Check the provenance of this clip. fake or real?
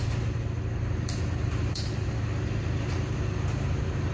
fake